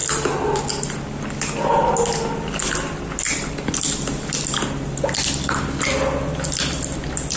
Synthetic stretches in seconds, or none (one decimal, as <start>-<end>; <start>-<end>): none

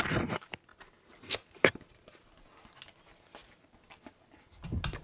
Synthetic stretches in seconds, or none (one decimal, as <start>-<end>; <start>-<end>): none

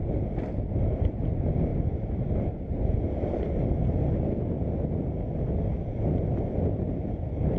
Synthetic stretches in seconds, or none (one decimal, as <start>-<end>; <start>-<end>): none